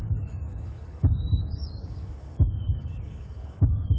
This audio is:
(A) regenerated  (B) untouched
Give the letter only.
A